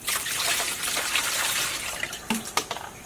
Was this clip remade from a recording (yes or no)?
yes